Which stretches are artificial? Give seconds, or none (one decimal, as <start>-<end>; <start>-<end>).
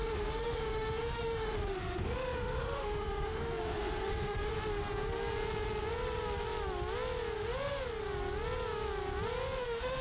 0.0-4.5; 9.6-10.0